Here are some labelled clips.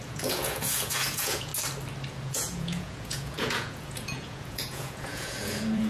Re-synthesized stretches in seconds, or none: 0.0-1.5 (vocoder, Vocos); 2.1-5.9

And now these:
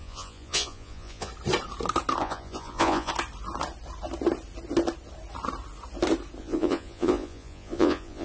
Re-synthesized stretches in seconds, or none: 0.0-1.3 (vocoder, Vocos); 2.2-3.1; 6.4-8.2

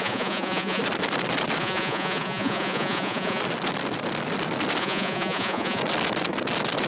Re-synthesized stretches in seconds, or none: 0.0-0.8 (vocoder, Vocos); 1.6-3.4; 4.8-5.8

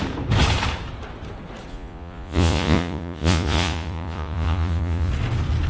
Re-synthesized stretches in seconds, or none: 1.7-5.1 (vocoder, Vocos)

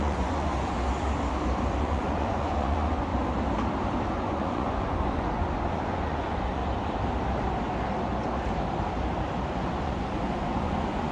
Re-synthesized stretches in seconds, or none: 0.0-0.5 (vocoder, Vocos); 1.8-3.1; 4.1-6.6; 9.5-11.1

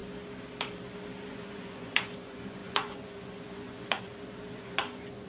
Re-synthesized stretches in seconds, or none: 1.3-5.3 (vocoder, Vocos)